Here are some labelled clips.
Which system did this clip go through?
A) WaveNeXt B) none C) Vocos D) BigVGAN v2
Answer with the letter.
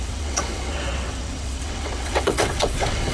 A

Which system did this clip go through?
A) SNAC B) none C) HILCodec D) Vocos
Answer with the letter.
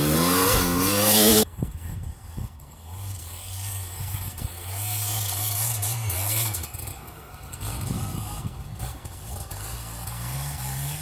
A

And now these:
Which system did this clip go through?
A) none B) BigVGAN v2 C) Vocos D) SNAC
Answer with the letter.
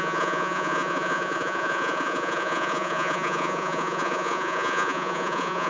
C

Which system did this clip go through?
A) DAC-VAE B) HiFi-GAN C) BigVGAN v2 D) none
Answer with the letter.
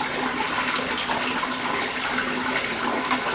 D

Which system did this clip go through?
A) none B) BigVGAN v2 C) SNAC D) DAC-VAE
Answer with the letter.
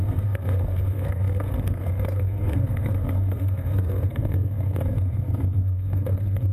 C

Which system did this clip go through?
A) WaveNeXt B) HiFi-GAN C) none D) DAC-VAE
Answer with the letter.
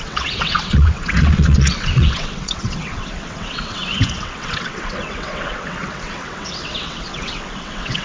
A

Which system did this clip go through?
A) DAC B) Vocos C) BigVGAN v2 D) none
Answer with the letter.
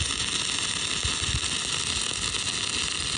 D